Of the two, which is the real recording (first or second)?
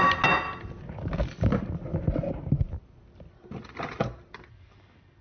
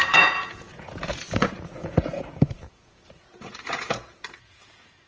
first